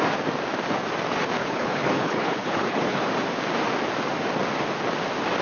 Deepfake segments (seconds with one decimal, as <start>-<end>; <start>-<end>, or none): 1.4-3.1